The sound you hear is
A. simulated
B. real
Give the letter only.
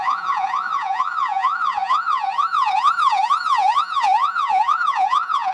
A